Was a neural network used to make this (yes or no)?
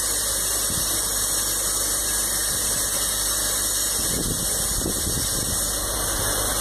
no